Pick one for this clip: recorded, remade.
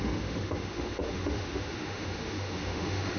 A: remade